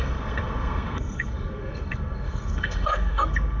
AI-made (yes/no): yes